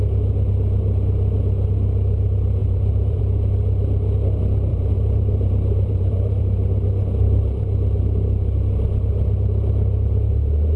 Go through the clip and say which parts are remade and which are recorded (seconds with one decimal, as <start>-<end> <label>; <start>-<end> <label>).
0.0-2.6 recorded; 2.6-3.2 remade; 3.2-4.7 recorded; 4.7-6.4 remade; 6.4-10.8 recorded